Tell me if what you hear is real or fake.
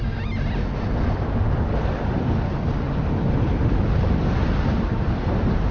real